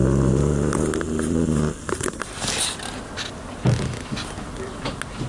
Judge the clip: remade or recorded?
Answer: recorded